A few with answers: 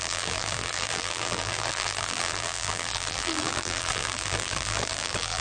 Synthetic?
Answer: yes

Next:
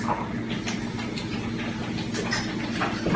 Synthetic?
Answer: no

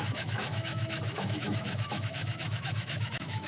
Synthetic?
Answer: yes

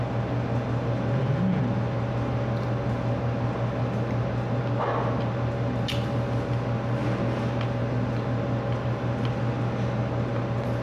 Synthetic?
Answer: no